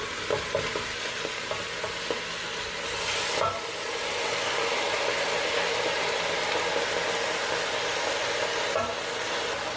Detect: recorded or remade recorded